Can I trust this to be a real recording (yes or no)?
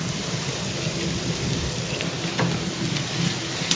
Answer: yes